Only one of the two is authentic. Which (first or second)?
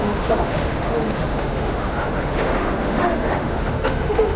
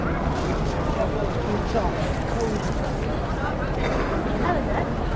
second